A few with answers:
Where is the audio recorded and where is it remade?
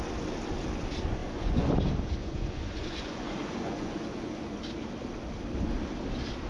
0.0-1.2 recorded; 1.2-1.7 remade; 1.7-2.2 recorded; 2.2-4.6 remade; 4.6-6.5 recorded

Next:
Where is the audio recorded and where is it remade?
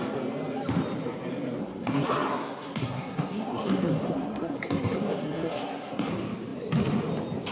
0.0-1.6 recorded; 1.6-6.1 remade; 6.1-7.5 recorded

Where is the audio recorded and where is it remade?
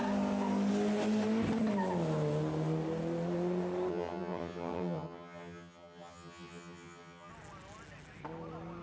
0.0-3.9 recorded; 3.9-7.3 remade; 7.3-8.8 recorded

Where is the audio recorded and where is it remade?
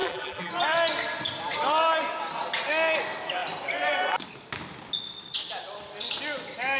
0.0-0.5 remade; 0.5-6.8 recorded